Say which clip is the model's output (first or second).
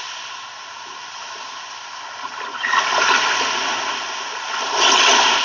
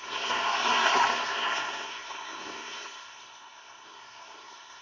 second